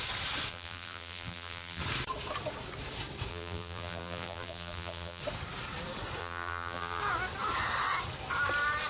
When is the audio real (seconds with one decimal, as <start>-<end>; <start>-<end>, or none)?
0.0-0.5; 1.8-3.3; 5.2-6.2; 7.0-8.9